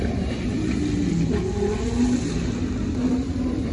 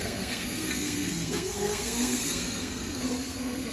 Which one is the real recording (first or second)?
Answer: first